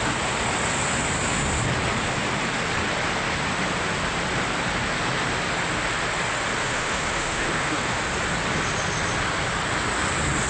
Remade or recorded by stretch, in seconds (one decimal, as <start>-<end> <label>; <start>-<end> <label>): 0.0-6.6 recorded; 6.6-8.0 remade; 8.0-10.5 recorded